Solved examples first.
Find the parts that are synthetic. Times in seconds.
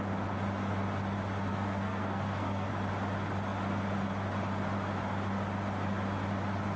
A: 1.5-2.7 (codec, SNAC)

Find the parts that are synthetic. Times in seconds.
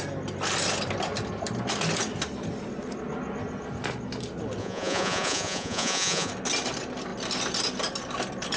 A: 4.6-6.3 (vocoder, Vocos)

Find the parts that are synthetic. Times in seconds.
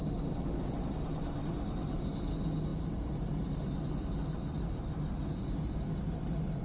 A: none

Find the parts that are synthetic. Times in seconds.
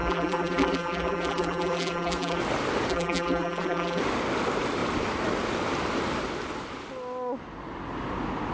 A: 0.0-2.4 (vocoder, BigVGAN v2); 2.9-4.0